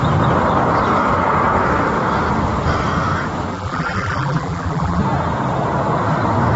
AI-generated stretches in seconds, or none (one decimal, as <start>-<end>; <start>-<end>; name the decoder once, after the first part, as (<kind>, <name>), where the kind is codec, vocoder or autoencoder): 3.5-5.0 (vocoder, BigVGAN v2)